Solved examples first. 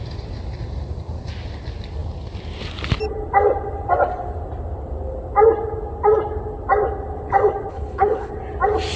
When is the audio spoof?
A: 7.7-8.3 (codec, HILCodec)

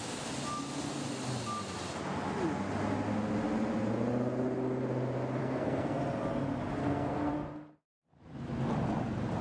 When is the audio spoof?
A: 5.4-6.0 (codec, SNAC); 6.8-7.3

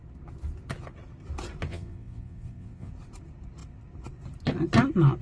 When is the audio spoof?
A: 1.7-2.9 (vocoder, Vocos)